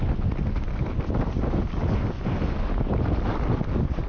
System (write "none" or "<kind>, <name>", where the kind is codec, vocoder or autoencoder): none